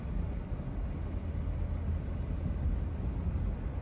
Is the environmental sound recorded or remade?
recorded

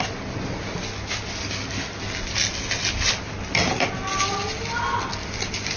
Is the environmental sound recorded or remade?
recorded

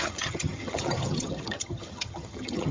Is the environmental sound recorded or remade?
remade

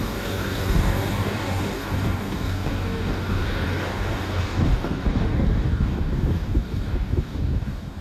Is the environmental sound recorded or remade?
remade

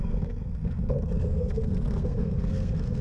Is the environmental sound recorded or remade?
remade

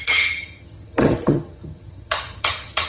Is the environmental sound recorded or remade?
remade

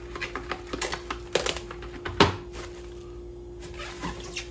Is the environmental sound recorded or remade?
recorded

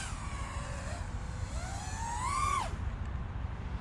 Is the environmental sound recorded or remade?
recorded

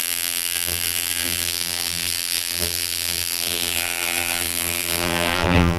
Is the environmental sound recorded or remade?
remade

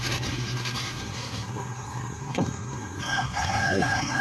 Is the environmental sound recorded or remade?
remade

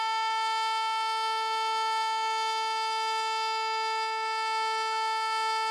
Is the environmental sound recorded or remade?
recorded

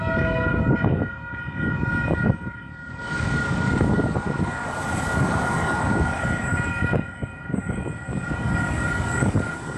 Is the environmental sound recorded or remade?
remade